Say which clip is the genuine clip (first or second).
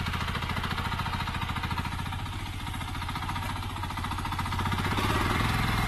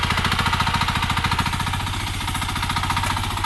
second